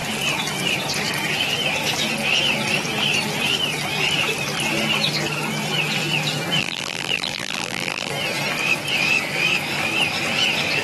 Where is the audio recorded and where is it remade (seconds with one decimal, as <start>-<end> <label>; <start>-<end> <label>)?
0.0-6.6 recorded; 6.6-8.1 remade; 8.1-10.8 recorded